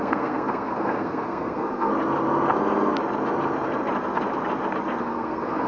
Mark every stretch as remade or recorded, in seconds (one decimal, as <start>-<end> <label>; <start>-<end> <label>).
0.0-1.9 remade; 1.9-5.0 recorded; 5.0-5.7 remade